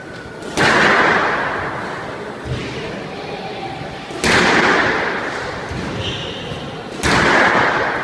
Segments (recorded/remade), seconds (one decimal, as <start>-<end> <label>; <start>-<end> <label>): 0.0-8.0 recorded